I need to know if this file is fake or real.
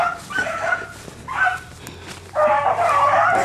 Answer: real